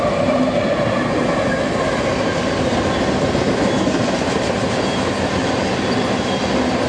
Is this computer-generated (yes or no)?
no